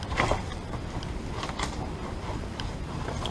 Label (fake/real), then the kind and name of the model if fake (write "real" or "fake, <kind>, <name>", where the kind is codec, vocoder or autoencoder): fake, vocoder, BigVGAN v2